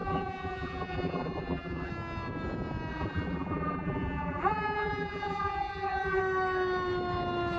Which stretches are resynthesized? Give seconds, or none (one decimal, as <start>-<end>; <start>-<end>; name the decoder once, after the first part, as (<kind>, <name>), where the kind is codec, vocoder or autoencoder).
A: 0.0-1.9 (vocoder, BigVGAN v2); 2.9-6.2